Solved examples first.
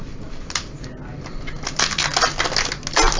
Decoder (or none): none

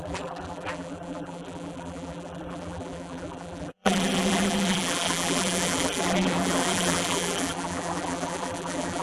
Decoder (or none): vocoder, BigVGAN v2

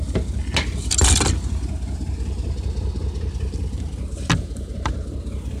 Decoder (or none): none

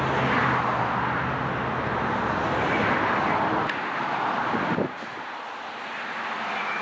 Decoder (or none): none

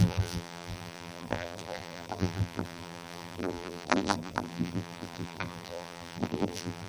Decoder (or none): vocoder, BigVGAN v2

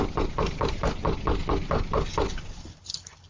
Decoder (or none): vocoder, BigVGAN v2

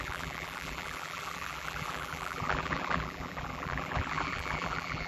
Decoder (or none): vocoder, BigVGAN v2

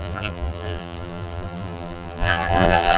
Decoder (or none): vocoder, BigVGAN v2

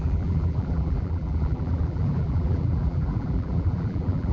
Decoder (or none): vocoder, BigVGAN v2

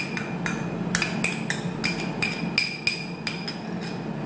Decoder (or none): none